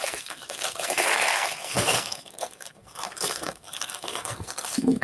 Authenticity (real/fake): fake